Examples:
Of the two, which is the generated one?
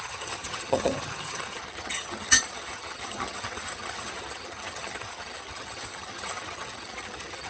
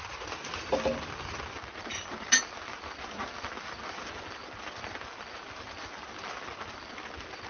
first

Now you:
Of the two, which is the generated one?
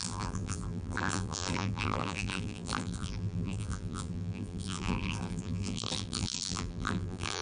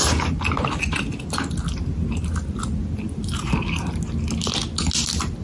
first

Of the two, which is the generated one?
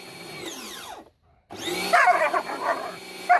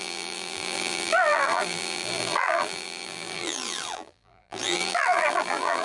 second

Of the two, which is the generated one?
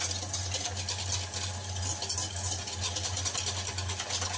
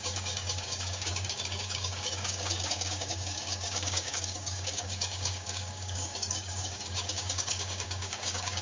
second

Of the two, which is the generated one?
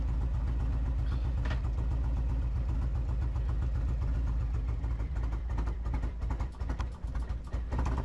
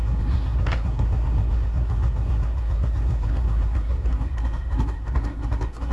second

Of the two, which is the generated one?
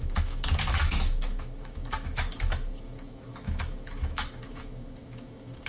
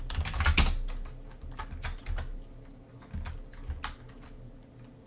first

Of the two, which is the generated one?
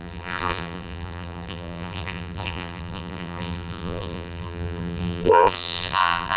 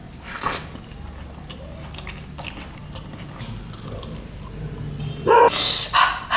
first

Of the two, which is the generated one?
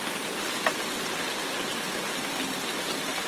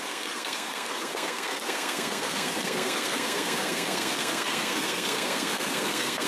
second